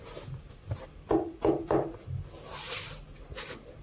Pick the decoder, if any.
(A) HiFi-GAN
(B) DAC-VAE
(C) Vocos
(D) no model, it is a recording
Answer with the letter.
D